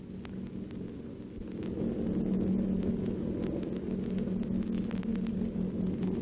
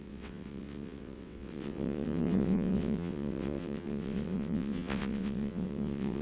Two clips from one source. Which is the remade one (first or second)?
second